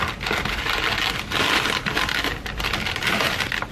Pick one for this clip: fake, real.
real